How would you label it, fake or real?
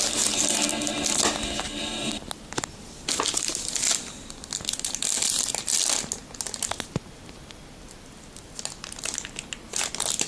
real